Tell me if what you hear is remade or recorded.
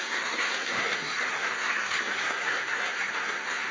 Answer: remade